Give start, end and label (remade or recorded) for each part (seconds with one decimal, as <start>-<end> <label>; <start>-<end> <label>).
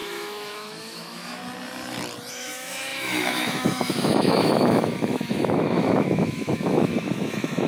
0.0-1.4 remade; 1.4-2.3 recorded; 2.3-7.7 remade